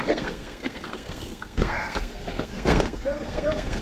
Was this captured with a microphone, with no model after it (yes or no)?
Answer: no